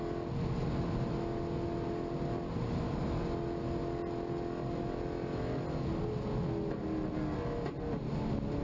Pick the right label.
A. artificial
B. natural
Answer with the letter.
B